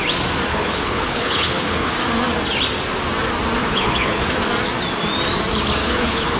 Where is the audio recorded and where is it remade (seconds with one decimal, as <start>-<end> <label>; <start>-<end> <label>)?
0.0-0.5 recorded; 0.5-1.9 remade; 1.9-3.6 recorded; 3.6-4.4 remade; 4.4-5.8 recorded; 5.8-6.4 remade